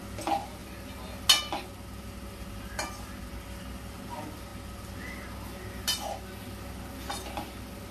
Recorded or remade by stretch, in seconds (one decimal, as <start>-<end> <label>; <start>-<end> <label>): 0.0-7.9 recorded